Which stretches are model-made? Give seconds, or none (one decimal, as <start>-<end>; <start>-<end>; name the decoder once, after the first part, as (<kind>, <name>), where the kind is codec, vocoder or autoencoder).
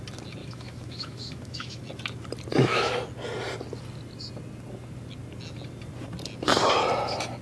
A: 0.4-1.8 (autoencoder, DAC-VAE); 2.5-3.0